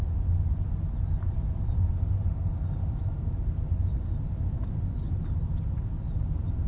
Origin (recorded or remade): recorded